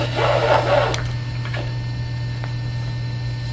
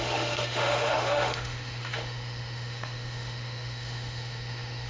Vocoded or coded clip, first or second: second